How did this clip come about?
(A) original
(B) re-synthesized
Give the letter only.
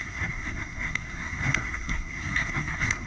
B